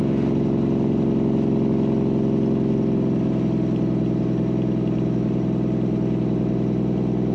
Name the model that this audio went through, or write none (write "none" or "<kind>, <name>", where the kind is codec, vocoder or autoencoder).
none